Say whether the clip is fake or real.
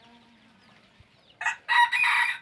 real